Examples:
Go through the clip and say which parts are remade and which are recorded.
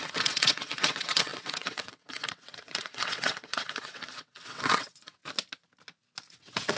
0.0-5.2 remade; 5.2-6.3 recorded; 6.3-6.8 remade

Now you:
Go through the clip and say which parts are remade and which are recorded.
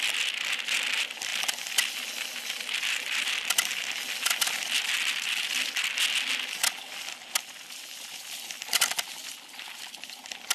0.0-10.5 recorded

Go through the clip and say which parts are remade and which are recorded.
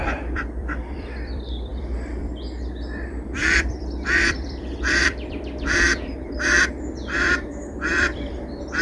0.0-5.9 remade; 5.9-6.7 recorded; 6.7-8.8 remade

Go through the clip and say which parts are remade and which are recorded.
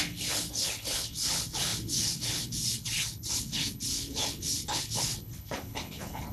0.0-6.3 remade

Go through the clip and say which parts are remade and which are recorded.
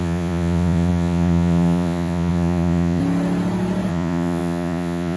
0.0-3.0 remade; 3.0-3.9 recorded; 3.9-5.2 remade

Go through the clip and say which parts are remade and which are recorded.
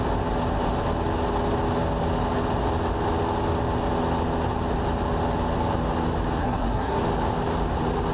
0.0-6.4 recorded; 6.4-7.0 remade; 7.0-8.1 recorded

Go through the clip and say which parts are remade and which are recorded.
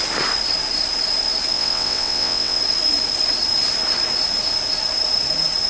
0.0-1.5 recorded; 1.5-2.6 remade; 2.6-5.7 recorded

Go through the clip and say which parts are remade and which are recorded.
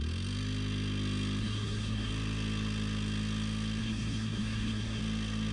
0.0-1.4 recorded; 1.4-2.1 remade; 2.1-3.8 recorded; 3.8-5.0 remade; 5.0-5.5 recorded